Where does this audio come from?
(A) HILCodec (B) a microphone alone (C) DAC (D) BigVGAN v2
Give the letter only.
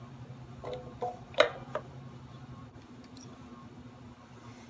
D